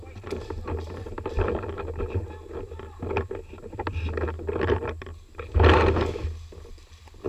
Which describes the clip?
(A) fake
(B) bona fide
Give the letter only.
B